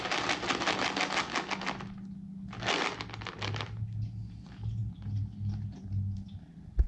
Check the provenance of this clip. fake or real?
real